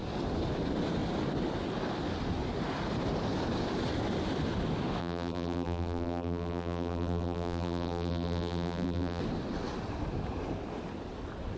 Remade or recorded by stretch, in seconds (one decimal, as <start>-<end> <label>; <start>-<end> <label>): 0.0-5.0 recorded; 5.0-9.2 remade; 9.2-11.6 recorded